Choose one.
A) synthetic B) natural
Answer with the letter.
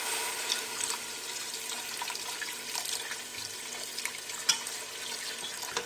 B